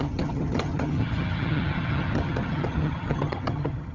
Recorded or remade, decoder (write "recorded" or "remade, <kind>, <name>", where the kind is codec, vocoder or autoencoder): remade, vocoder, HiFi-GAN